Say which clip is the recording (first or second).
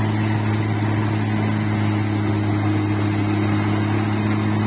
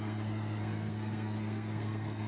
first